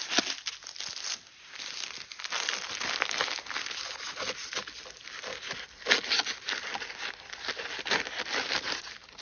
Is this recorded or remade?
recorded